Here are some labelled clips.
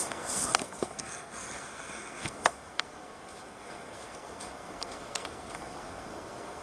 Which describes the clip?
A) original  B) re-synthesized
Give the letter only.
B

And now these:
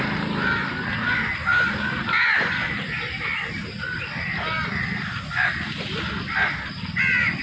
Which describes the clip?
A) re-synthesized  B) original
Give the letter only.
B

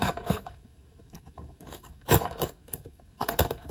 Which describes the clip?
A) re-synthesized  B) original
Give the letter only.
A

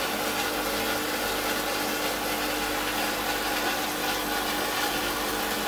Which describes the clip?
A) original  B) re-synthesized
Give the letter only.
A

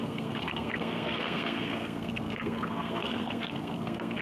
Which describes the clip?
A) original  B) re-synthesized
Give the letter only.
B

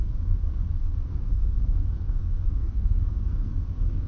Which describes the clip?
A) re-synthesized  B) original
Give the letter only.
A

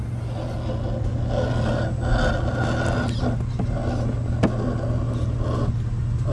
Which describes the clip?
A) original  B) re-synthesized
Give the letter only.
A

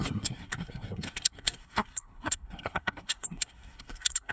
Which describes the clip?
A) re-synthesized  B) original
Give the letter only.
A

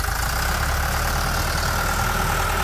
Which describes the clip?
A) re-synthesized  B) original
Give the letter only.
B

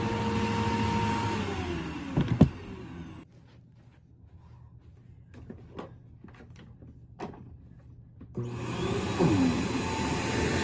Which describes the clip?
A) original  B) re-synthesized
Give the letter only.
A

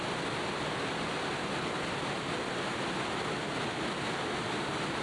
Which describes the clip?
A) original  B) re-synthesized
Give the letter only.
A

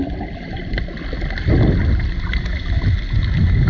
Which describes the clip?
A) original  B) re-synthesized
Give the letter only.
A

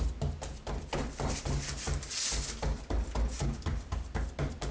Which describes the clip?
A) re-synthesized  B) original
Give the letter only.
B